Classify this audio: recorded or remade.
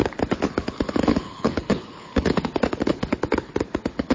remade